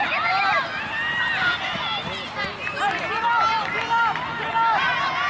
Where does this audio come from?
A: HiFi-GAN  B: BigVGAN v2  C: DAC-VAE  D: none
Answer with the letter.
D